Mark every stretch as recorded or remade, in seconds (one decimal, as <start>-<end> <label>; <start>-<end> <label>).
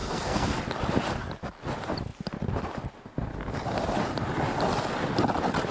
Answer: 0.0-0.6 remade; 0.6-5.7 recorded